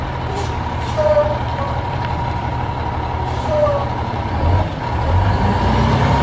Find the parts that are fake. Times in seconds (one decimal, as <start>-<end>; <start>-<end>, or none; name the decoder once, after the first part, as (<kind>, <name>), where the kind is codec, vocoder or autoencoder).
1.5-2.5 (vocoder, BigVGAN v2)